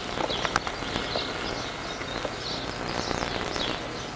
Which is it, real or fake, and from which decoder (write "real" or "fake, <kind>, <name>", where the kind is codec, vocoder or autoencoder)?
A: real